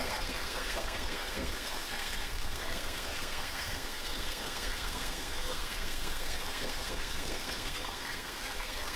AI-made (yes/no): yes